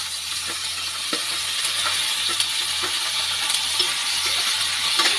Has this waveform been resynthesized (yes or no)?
no